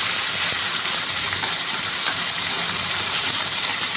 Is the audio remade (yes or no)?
yes